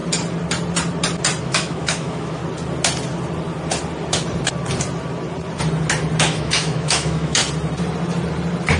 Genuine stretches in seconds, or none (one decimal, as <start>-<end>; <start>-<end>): 0.0-1.4; 2.4-6.2; 7.4-8.8